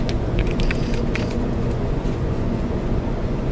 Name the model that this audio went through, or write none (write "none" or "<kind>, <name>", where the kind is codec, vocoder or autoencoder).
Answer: vocoder, Vocos